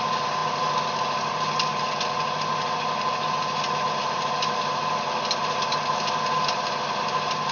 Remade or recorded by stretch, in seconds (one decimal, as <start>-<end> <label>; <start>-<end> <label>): 0.0-7.5 recorded